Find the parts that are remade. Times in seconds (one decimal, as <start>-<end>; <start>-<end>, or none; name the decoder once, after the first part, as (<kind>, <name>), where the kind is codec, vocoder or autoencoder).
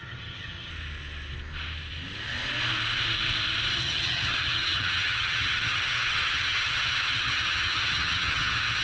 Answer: 0.0-0.7 (vocoder, HiFi-GAN); 3.7-8.8